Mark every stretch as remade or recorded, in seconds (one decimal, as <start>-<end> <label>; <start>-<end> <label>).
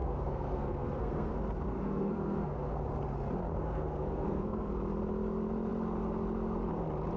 0.0-2.7 remade; 2.7-3.6 recorded; 3.6-4.7 remade; 4.7-7.2 recorded